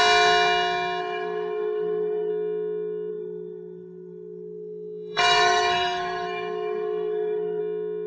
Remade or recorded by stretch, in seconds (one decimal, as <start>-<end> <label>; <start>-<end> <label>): 0.0-1.0 recorded; 1.0-2.3 remade; 2.3-3.1 recorded; 3.1-7.6 remade; 7.6-8.1 recorded